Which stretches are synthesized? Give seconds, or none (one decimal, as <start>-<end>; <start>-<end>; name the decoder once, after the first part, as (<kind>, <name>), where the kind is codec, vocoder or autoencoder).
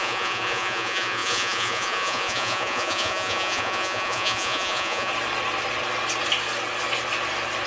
0.0-5.1 (vocoder, Vocos)